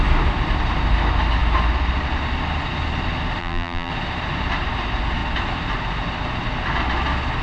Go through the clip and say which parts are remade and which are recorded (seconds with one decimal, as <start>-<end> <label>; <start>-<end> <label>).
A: 0.0-3.4 recorded; 3.4-3.9 remade; 3.9-7.4 recorded